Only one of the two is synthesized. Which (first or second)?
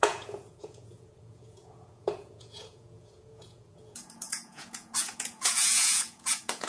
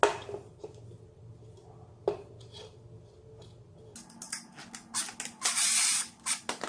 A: first